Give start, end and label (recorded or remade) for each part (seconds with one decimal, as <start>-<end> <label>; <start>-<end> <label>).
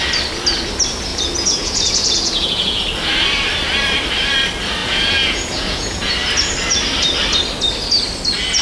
0.0-1.1 recorded; 1.1-2.8 remade; 2.8-4.8 recorded; 4.8-6.1 remade; 6.1-8.6 recorded